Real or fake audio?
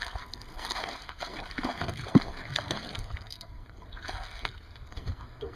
fake